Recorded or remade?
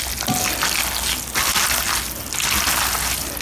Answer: recorded